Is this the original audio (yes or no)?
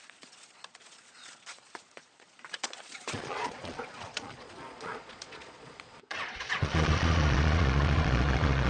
no